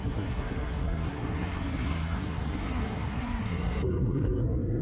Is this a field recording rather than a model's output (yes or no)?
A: no